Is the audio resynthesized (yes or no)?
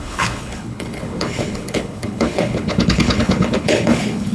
yes